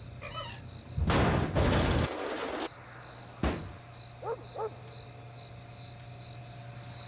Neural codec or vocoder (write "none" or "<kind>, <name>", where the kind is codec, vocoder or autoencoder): none